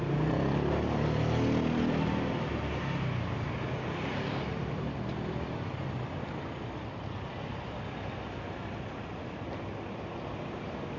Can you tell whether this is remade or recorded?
recorded